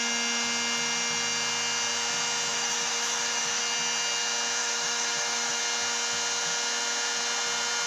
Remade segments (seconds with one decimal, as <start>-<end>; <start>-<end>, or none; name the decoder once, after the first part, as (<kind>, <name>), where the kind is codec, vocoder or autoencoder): 2.5-3.6 (autoencoder, DAC-VAE); 4.6-5.6